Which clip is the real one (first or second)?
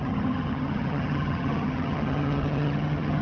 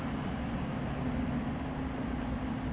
second